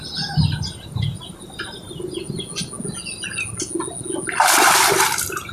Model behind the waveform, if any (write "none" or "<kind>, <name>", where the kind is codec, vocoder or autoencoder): none